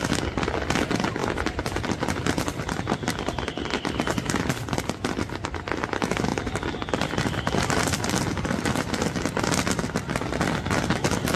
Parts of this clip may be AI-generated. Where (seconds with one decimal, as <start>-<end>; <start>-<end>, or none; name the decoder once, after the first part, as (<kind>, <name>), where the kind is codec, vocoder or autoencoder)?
1.2-3.8 (vocoder, BigVGAN v2); 6.3-8.9